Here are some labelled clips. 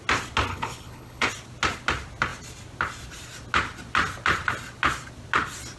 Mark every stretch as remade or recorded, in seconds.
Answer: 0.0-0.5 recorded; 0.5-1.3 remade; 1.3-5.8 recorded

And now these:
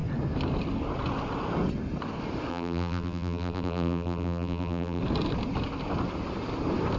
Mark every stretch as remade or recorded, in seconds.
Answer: 0.0-2.5 recorded; 2.5-5.0 remade; 5.0-7.0 recorded

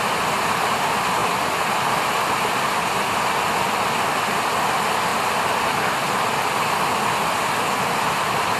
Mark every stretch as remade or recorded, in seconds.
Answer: 0.0-8.6 recorded